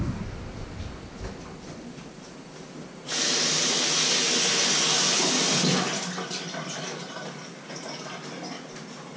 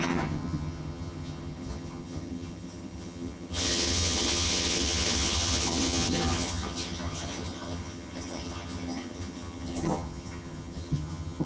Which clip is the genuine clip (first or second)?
first